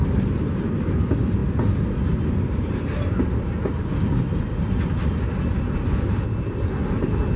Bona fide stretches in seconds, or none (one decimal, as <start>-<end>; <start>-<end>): 0.0-7.4